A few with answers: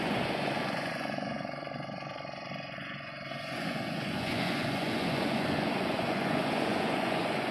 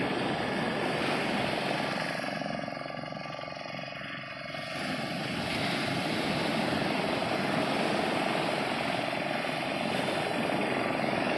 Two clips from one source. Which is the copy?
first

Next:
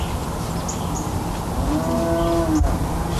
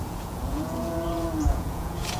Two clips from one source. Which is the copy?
second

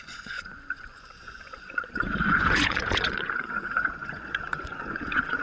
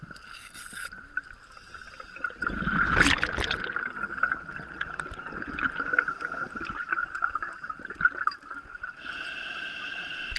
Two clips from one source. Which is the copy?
first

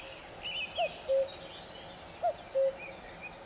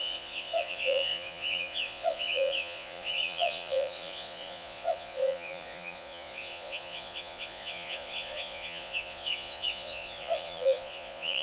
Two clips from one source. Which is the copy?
second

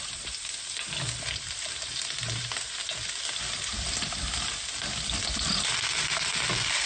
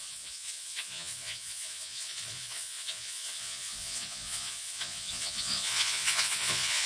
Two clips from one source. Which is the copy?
second